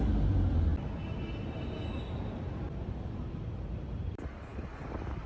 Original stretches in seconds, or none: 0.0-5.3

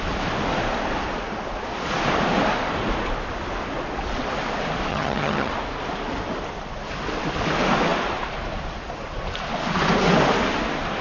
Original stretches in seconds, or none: 0.0-4.9; 5.5-11.0